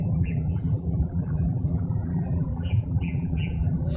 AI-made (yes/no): yes